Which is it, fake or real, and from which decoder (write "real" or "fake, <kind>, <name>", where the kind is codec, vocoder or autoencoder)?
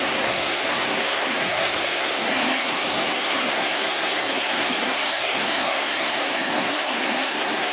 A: fake, codec, SNAC